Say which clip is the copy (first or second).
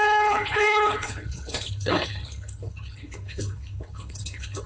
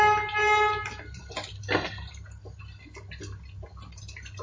first